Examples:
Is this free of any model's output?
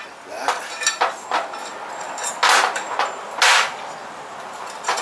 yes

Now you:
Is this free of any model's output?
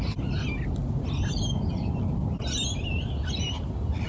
yes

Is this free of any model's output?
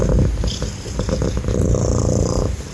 yes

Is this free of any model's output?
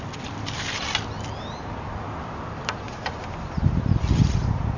yes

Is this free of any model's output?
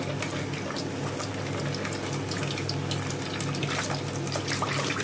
yes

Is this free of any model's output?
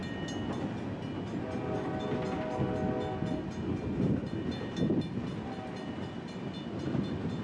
yes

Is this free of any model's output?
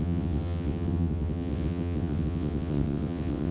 no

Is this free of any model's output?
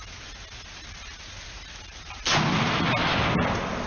yes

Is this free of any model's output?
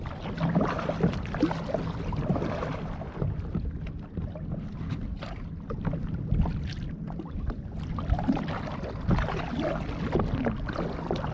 yes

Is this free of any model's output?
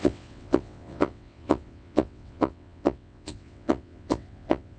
no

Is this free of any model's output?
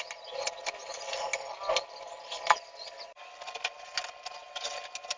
yes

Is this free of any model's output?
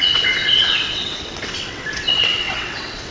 no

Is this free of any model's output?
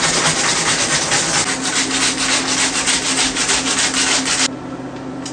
yes